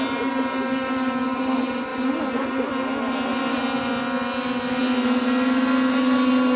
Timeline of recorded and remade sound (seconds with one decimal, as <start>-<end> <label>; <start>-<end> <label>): 0.0-6.6 recorded